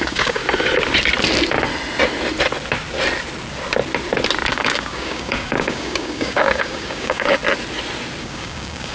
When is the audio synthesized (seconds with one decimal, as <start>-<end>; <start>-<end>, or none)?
0.0-0.4; 4.5-7.4; 8.2-8.9